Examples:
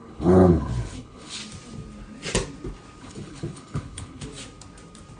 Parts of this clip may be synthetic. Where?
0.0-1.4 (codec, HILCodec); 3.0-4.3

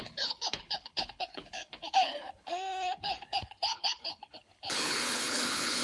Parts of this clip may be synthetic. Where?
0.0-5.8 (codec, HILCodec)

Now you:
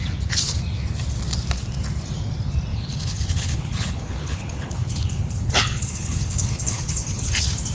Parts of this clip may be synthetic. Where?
2.7-7.3 (codec, HILCodec)

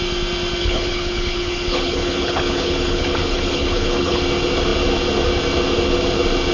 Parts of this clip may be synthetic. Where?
0.6-4.2 (codec, HILCodec)